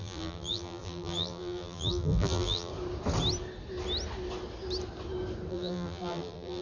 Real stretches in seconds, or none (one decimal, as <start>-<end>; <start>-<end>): 2.7-5.5